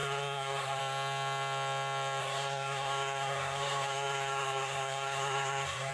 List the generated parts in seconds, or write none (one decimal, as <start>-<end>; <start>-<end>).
0.0-0.8; 2.2-5.9